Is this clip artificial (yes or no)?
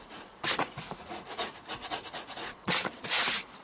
yes